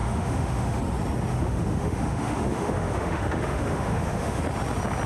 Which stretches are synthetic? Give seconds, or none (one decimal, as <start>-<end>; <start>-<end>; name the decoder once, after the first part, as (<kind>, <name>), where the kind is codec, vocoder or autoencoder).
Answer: 0.0-0.8 (autoencoder, DAC-VAE); 1.3-4.4